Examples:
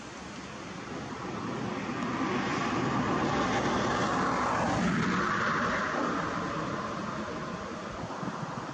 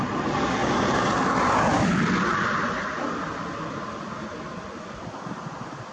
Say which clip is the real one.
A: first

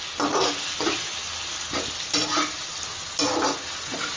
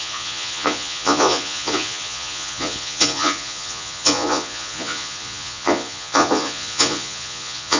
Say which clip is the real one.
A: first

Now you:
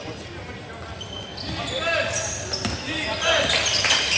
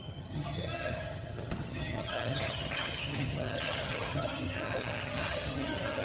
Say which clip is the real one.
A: first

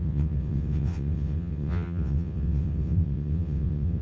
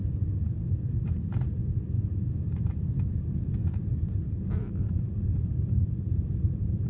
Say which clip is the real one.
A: second